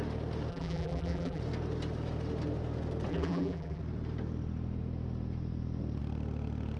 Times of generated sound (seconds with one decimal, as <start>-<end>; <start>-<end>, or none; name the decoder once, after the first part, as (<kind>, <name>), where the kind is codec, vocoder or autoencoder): 0.5-1.4 (vocoder, BigVGAN v2); 3.1-3.8